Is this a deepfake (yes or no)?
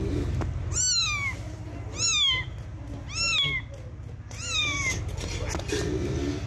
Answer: no